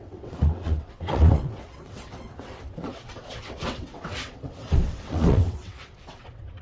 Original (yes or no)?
no